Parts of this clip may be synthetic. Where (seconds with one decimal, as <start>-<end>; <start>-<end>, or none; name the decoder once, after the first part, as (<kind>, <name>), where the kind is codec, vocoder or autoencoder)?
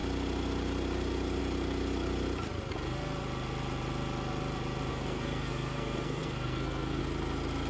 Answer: 4.9-7.0 (codec, SNAC)